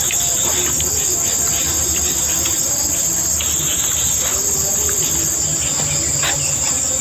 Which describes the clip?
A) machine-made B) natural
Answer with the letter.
B